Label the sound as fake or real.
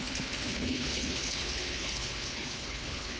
fake